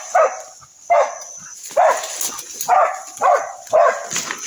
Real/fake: real